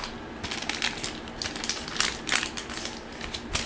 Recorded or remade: recorded